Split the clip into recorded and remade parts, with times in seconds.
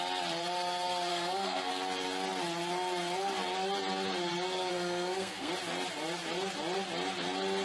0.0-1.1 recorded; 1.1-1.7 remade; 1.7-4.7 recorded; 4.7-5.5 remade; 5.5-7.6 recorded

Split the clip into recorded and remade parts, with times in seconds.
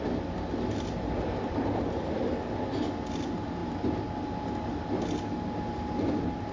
0.0-6.5 recorded